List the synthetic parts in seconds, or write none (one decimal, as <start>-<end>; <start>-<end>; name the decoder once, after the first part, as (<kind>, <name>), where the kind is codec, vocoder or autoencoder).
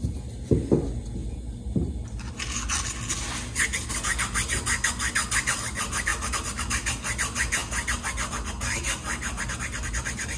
none